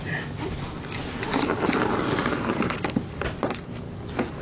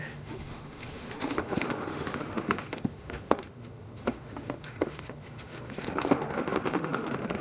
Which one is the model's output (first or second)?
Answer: second